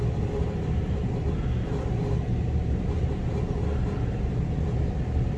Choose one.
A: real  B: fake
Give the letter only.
A